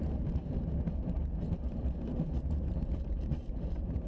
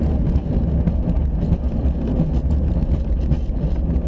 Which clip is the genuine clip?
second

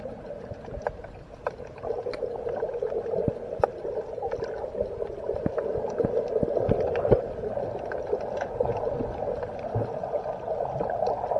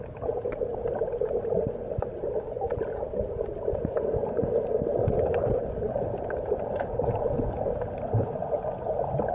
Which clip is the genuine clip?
first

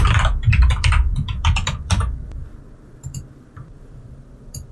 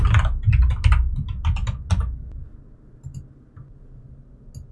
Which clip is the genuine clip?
second